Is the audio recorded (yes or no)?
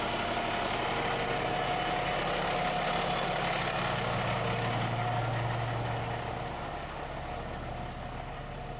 yes